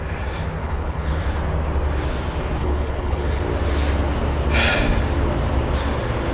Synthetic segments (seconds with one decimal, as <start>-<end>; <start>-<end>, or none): 0.6-1.2; 2.6-3.4